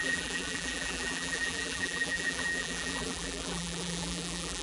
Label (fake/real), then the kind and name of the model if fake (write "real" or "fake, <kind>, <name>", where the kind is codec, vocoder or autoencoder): fake, vocoder, BigVGAN v2